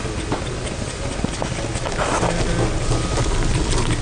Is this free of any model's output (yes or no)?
yes